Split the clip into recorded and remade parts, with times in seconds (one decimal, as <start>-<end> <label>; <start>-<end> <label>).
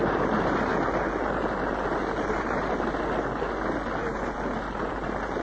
0.0-5.4 recorded